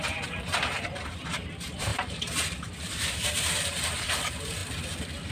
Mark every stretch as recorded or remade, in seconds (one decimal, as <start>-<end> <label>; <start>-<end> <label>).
0.0-4.6 remade; 4.6-5.3 recorded